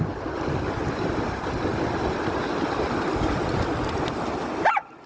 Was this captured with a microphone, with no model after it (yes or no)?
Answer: yes